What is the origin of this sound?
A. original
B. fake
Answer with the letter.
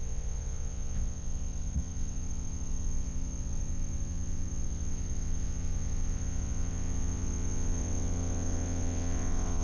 B